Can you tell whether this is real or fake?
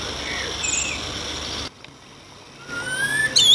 real